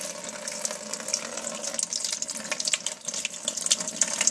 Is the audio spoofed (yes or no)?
no